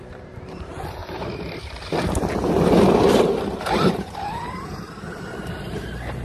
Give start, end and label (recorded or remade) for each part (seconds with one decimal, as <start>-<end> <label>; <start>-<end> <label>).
0.0-1.0 remade; 1.0-3.4 recorded; 3.4-6.2 remade